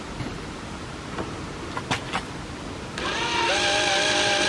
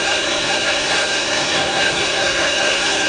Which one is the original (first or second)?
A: first